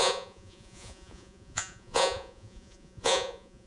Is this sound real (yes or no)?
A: no